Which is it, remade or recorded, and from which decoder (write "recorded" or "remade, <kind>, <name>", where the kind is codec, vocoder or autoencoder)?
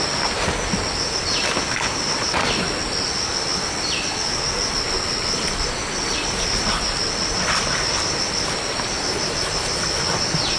recorded